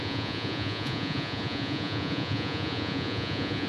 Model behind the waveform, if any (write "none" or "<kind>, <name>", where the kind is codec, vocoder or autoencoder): vocoder, Vocos